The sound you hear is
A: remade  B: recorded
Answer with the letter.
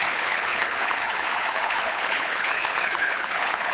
A